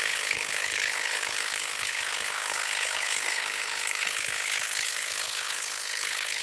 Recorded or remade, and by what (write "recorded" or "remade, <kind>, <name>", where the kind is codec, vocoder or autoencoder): remade, codec, HILCodec